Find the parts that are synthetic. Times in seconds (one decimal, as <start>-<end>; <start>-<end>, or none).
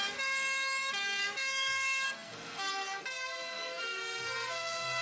0.0-5.0